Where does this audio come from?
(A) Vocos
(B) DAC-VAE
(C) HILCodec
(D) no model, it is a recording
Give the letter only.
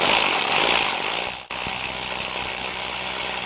D